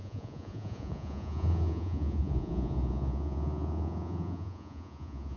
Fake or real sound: fake